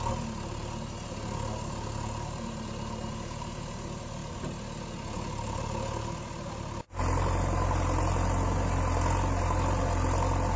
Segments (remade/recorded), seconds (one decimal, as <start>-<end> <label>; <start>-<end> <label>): 0.0-10.6 recorded